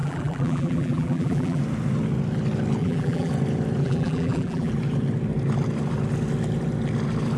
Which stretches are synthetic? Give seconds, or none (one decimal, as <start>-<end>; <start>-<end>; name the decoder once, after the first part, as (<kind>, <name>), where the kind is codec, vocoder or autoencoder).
0.0-1.6 (vocoder, BigVGAN v2); 2.8-3.3; 3.8-4.7